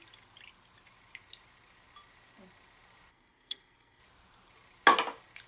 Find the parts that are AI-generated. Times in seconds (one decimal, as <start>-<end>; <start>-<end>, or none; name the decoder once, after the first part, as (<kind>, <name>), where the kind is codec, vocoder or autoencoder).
3.1-4.0 (codec, SNAC)